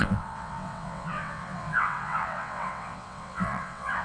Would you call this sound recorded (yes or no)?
no